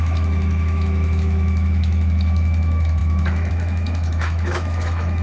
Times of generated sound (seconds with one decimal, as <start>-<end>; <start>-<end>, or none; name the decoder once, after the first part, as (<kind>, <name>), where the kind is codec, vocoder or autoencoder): 0.0-5.2 (autoencoder, DAC-VAE)